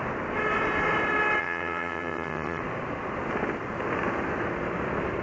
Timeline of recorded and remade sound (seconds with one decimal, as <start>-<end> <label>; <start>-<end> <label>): 0.0-1.4 recorded; 1.4-2.6 remade; 2.6-5.2 recorded